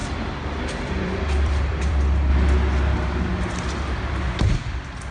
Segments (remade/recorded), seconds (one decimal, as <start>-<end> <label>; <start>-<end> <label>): 0.0-1.0 recorded; 1.0-2.3 remade; 2.3-4.4 recorded; 4.4-5.1 remade